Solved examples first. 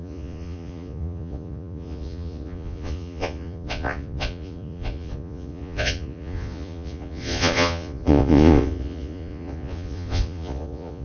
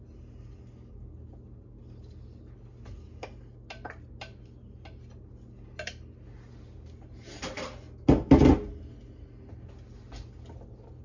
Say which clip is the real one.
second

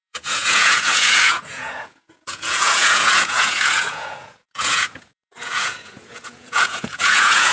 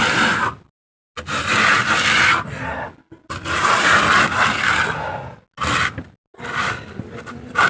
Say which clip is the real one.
second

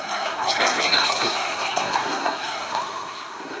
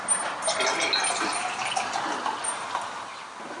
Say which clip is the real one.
second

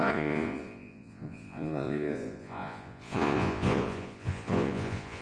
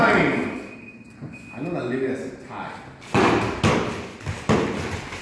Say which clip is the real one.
second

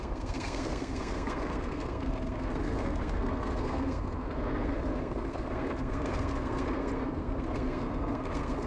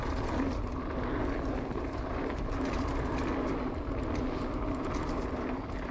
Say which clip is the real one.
second